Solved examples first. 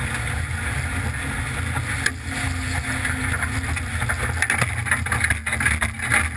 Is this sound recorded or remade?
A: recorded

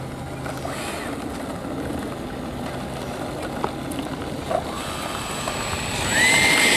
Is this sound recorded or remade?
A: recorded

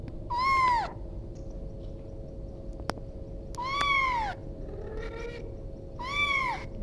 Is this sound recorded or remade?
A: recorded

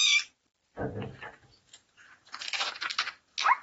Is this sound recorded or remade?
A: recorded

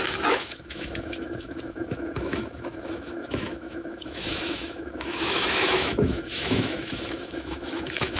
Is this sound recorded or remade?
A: remade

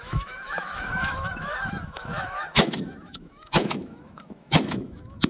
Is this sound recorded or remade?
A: remade